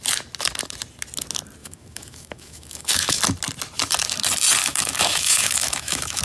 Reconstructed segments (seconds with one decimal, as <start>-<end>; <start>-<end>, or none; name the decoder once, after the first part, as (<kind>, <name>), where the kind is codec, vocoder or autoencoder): 1.6-3.2 (autoencoder, DAC-VAE); 4.6-6.2

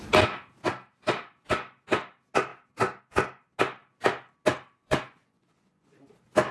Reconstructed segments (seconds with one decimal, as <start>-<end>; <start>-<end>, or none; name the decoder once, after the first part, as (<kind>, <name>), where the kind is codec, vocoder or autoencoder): 4.8-6.1 (vocoder, Vocos)

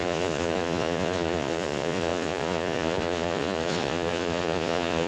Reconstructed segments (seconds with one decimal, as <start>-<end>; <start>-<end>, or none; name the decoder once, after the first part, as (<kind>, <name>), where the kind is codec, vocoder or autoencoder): 0.0-5.1 (vocoder, Vocos)

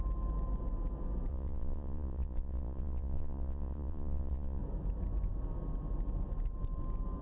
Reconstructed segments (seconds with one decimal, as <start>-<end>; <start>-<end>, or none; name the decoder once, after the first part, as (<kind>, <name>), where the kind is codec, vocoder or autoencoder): 1.3-4.6 (vocoder, Vocos)

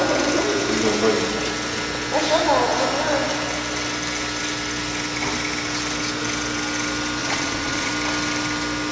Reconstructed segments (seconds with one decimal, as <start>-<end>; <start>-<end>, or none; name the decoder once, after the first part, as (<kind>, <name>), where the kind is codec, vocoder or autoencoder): 7.2-7.9 (vocoder, Vocos)

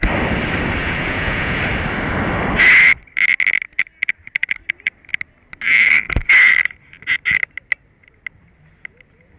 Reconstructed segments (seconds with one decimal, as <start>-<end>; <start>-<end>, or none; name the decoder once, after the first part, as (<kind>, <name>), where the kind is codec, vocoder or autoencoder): 0.8-1.6 (vocoder, Vocos)

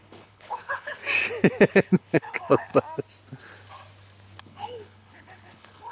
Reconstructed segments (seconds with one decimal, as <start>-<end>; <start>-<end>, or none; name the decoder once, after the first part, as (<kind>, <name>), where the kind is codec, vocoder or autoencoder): 0.0-1.0 (codec, HILCodec); 1.7-2.7; 4.4-5.9

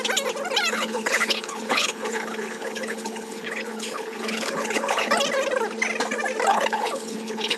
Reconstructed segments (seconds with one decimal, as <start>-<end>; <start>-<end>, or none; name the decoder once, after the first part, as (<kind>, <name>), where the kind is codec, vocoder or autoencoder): 0.7-5.1 (codec, HILCodec); 6.5-7.6